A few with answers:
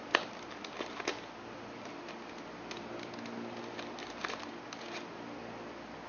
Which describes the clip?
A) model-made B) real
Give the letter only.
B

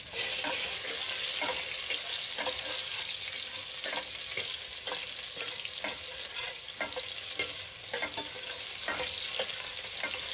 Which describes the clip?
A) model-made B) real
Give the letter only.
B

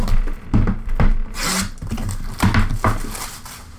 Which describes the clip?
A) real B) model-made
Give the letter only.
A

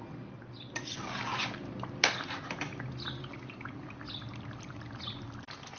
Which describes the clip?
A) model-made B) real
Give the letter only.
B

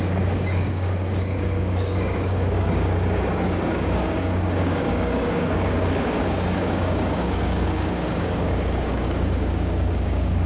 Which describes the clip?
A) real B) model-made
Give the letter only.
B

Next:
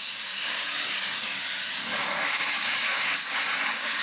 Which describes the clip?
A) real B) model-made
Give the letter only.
B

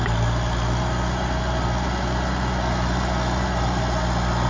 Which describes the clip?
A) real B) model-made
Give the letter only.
A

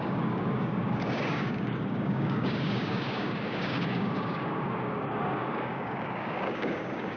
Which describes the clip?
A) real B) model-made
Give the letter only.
B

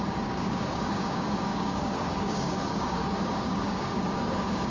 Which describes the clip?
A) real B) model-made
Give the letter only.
B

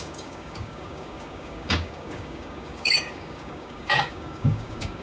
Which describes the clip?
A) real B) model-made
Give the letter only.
B